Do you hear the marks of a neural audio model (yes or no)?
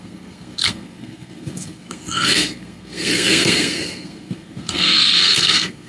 yes